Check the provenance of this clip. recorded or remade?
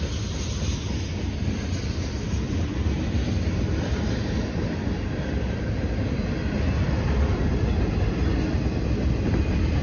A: recorded